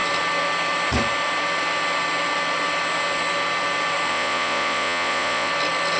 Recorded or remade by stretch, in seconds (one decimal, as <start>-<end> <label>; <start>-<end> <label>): 0.0-4.1 recorded; 4.1-5.5 remade; 5.5-6.0 recorded

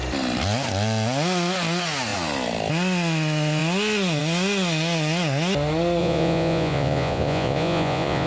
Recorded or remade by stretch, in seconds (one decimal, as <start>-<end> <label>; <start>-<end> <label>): 0.0-6.0 recorded; 6.0-8.3 remade

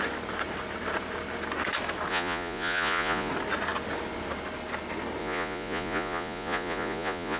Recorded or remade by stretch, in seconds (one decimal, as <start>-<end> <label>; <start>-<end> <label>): 0.0-2.1 recorded; 2.1-3.3 remade; 3.3-5.2 recorded; 5.2-7.4 remade

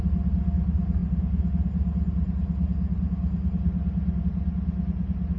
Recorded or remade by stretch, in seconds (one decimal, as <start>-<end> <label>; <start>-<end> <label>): 0.0-5.4 recorded

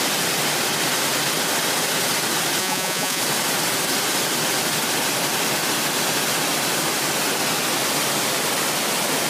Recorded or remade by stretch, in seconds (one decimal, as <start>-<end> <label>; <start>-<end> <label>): 0.0-2.6 recorded; 2.6-3.2 remade; 3.2-9.3 recorded

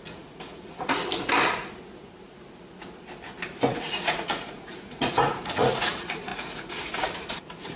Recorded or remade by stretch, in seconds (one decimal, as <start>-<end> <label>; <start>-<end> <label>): 0.0-1.0 remade; 1.0-3.7 recorded; 3.7-7.8 remade

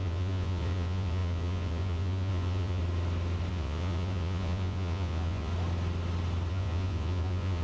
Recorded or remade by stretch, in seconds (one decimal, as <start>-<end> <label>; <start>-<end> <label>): 0.0-2.8 remade; 2.8-3.5 recorded; 3.5-5.5 remade; 5.5-6.5 recorded; 6.5-7.6 remade